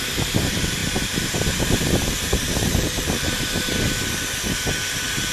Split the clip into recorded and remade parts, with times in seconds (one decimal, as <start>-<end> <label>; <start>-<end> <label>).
0.0-0.8 recorded; 0.8-4.0 remade; 4.0-5.3 recorded